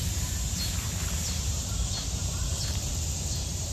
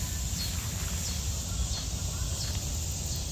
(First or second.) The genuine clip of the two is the second